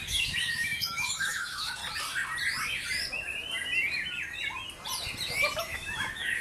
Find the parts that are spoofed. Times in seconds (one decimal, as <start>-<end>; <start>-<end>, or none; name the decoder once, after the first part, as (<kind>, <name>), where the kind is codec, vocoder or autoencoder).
0.0-1.8 (autoencoder, DAC-VAE); 5.6-6.4